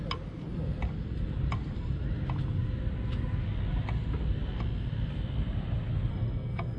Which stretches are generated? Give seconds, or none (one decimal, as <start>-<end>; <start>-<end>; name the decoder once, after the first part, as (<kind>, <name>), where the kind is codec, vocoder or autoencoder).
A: 6.1-6.8 (codec, SNAC)

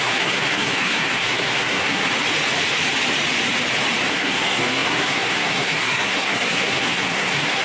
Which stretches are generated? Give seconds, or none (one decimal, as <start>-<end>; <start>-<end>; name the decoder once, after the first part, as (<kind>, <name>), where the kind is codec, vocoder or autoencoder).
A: 0.0-2.1 (codec, SNAC); 4.1-7.6